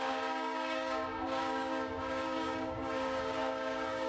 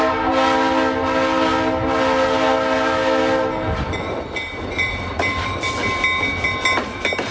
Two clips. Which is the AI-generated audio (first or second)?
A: first